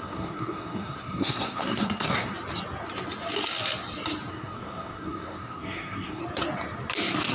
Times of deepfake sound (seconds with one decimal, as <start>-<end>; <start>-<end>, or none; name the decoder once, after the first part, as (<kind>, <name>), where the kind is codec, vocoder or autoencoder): 0.0-2.3 (codec, SNAC); 4.3-6.2